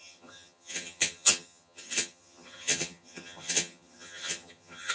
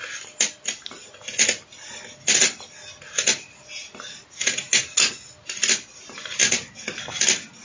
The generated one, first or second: first